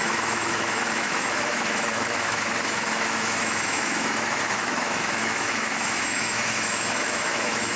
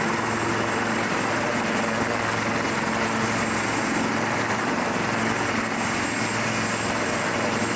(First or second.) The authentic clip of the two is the second